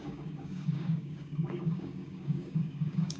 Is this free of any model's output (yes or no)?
no